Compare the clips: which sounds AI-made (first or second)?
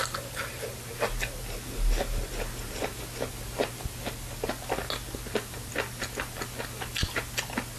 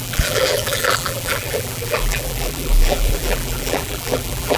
second